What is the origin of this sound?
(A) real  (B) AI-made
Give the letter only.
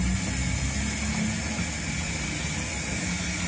A